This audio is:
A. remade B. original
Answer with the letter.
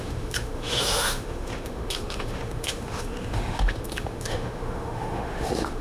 A